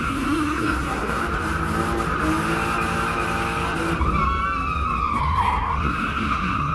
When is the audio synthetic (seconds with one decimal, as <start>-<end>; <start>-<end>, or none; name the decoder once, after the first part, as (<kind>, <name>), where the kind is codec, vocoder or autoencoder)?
0.0-1.2 (codec, SNAC); 5.2-6.7